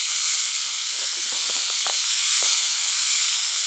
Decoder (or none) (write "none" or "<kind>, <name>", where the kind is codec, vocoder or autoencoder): codec, SNAC